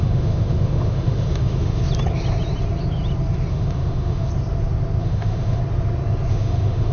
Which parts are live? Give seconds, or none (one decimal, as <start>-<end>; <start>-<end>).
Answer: 1.8-3.5; 4.3-5.0; 5.6-6.3